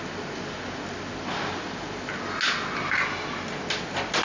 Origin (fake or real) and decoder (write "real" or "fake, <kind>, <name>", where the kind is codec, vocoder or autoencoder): real